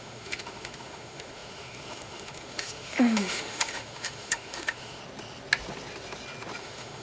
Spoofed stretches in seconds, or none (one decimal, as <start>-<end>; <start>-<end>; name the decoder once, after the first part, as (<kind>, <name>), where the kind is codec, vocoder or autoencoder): 0.0-5.0 (autoencoder, DAC-VAE); 6.6-7.0